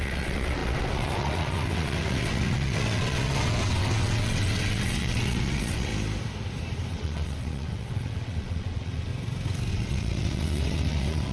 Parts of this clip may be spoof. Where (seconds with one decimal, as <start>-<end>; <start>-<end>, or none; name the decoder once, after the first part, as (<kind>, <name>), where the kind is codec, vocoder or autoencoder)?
0.0-5.9 (vocoder, WaveNeXt); 6.9-9.1; 9.7-11.3